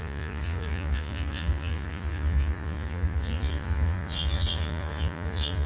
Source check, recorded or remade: remade